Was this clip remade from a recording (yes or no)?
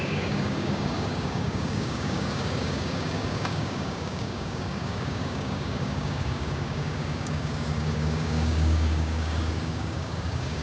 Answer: yes